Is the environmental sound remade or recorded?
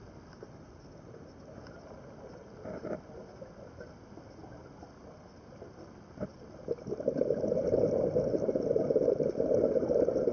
recorded